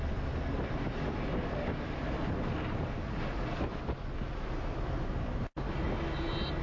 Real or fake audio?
real